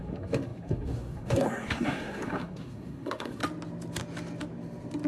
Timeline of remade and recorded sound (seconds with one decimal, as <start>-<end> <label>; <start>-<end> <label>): 0.0-3.4 remade; 3.4-5.1 recorded